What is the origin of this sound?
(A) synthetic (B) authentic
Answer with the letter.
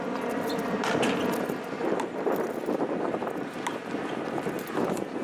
B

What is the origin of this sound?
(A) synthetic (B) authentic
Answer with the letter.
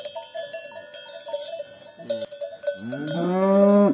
B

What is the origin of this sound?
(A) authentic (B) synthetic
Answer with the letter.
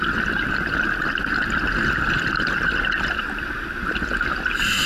A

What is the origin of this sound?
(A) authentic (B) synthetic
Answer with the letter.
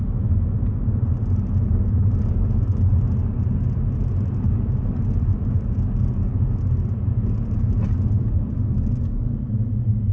A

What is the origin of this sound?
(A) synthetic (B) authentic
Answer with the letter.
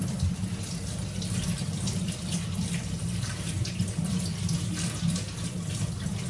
B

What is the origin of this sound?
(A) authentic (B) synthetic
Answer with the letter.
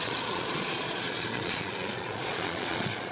B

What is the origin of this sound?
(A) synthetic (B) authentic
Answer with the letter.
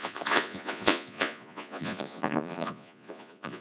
A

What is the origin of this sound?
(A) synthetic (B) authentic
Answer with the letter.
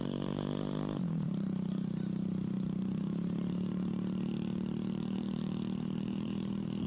A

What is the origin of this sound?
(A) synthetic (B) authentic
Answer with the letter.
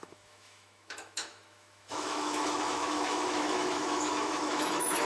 A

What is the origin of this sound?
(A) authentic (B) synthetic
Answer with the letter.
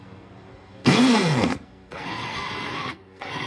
B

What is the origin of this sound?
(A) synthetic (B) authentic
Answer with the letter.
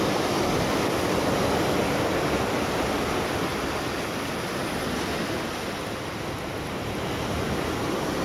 B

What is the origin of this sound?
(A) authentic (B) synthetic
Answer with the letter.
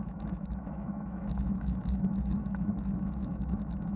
B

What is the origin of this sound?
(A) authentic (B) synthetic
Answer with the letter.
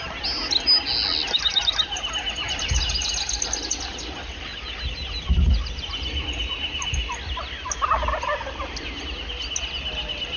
A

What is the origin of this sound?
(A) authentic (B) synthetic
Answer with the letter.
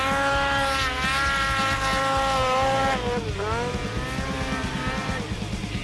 A